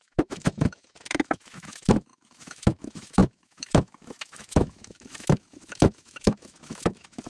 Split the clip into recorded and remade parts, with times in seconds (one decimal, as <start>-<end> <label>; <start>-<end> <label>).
0.0-7.3 remade